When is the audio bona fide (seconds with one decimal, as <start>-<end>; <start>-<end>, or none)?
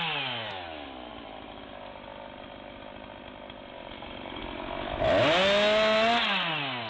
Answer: 0.0-1.1; 4.4-6.9